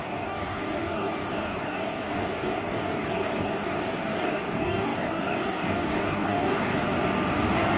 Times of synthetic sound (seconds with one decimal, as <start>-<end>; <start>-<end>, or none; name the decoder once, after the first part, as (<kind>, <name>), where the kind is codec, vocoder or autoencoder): 0.0-6.8 (codec, DAC); 7.3-7.8